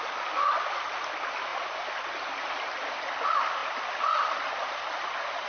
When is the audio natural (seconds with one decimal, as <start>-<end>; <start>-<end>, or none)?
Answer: 0.0-5.5